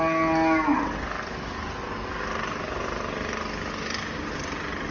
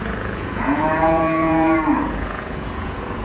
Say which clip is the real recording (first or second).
first